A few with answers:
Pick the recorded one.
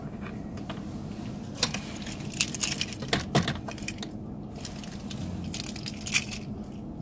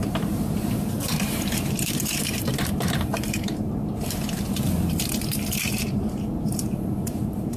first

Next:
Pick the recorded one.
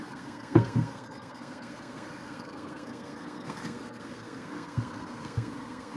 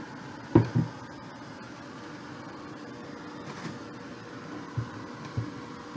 second